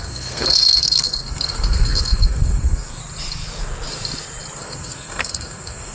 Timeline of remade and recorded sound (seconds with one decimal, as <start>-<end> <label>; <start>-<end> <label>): 0.0-3.0 remade; 3.0-4.6 recorded; 4.6-5.9 remade

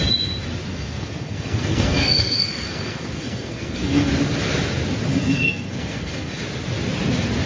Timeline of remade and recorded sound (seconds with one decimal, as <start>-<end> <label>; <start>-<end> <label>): 0.0-0.7 recorded; 0.7-4.1 remade; 4.1-5.1 recorded; 5.1-6.4 remade; 6.4-7.5 recorded

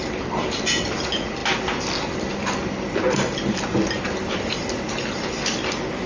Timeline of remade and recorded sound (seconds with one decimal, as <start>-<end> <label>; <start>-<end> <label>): 0.0-6.1 recorded

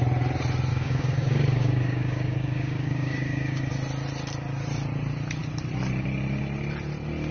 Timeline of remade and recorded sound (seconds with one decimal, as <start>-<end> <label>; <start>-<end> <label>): 0.0-0.7 recorded; 0.7-3.7 remade; 3.7-7.3 recorded

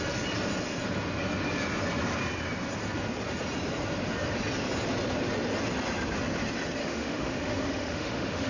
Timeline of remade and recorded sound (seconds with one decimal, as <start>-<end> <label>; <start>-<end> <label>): 0.0-6.8 recorded; 6.8-8.5 remade

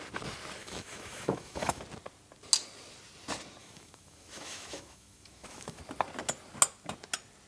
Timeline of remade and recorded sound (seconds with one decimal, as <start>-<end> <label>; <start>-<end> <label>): 0.0-0.6 recorded; 0.6-1.8 remade; 1.8-3.6 recorded; 3.6-5.8 remade; 5.8-7.5 recorded

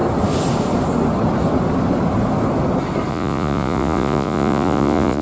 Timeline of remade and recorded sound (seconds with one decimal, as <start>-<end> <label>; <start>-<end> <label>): 0.0-3.1 recorded; 3.1-5.2 remade